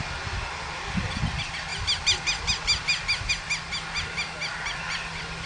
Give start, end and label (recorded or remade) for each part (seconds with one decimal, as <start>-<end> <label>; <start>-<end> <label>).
0.0-5.5 recorded